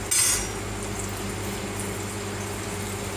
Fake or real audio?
real